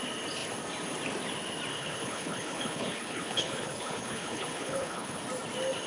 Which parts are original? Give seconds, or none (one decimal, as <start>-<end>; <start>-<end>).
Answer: 0.0-1.7; 5.2-5.9